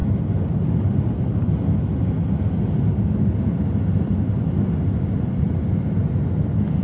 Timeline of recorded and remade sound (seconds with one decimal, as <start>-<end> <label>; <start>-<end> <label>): 0.0-6.8 recorded